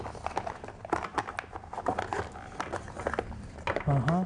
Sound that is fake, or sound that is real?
real